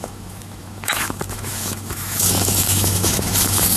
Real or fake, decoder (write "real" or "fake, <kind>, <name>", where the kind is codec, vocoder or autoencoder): fake, autoencoder, DAC-VAE